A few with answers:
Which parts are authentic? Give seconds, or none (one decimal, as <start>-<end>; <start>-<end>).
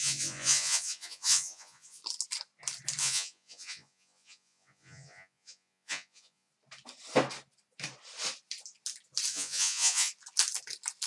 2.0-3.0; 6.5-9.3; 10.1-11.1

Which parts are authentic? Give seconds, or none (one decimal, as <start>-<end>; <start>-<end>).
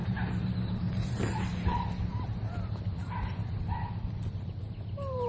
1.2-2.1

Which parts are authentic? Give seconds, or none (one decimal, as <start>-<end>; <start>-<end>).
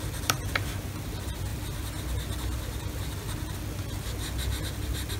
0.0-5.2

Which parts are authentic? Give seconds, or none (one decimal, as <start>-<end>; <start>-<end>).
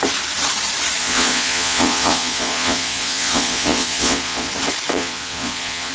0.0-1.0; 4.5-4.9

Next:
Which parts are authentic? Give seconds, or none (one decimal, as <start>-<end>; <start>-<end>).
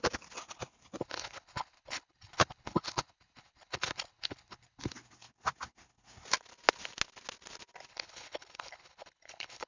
0.0-1.0; 4.8-7.9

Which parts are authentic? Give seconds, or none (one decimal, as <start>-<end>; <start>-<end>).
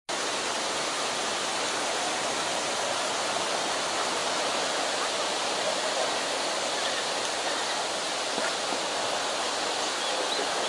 0.0-10.7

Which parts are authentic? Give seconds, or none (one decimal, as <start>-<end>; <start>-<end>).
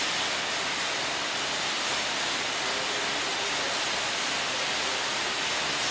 0.0-5.9